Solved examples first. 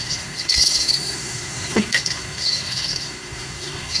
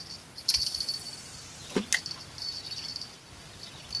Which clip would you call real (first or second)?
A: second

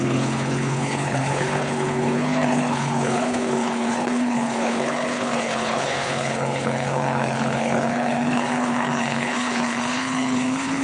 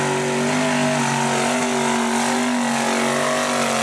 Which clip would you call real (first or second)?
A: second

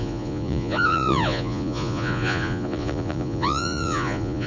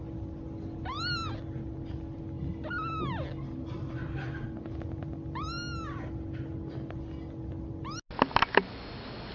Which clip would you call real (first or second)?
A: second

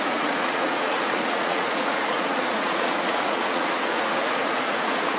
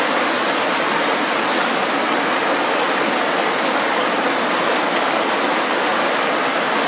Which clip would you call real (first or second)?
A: second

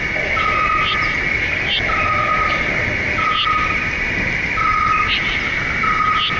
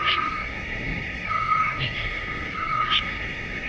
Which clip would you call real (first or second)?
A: first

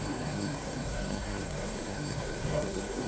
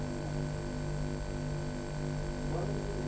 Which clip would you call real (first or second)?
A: second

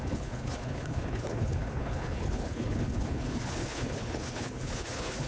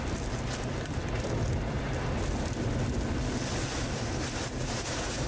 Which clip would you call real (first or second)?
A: second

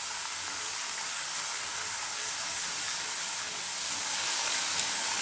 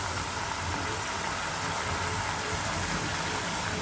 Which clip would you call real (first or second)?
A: second